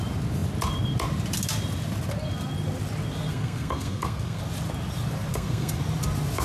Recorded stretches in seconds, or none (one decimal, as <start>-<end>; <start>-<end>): 0.0-3.3; 4.4-5.3; 5.8-6.4